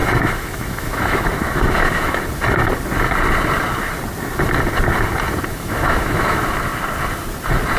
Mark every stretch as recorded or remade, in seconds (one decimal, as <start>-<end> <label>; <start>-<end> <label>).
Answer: 0.0-2.2 remade; 2.2-5.5 recorded; 5.5-6.4 remade; 6.4-7.8 recorded